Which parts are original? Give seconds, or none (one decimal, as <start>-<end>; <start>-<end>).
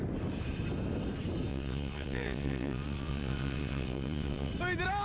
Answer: 0.0-1.5; 4.5-5.0